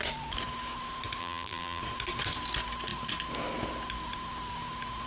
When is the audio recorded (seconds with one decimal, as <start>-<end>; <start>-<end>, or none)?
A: 0.0-1.2; 1.8-5.1